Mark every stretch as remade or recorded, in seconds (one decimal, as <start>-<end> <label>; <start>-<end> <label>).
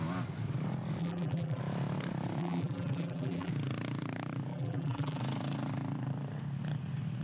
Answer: 0.0-1.0 recorded; 1.0-1.6 remade; 1.6-2.4 recorded; 2.4-3.5 remade; 3.5-4.5 recorded; 4.5-5.2 remade; 5.2-7.2 recorded